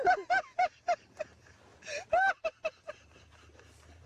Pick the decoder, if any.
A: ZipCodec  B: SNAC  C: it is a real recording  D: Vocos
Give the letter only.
C